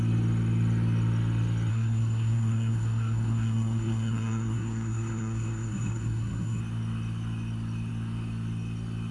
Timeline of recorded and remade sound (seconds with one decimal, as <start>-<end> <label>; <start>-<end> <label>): 0.0-1.7 recorded; 1.7-6.6 remade; 6.6-9.1 recorded